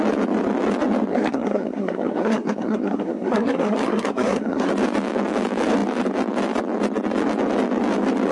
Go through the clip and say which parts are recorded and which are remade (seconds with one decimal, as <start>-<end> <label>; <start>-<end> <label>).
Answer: 0.0-1.1 recorded; 1.1-4.7 remade; 4.7-8.3 recorded